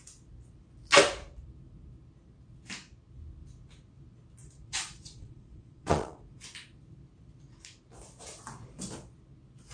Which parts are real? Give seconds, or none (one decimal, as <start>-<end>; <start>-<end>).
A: 0.0-4.4; 6.2-9.7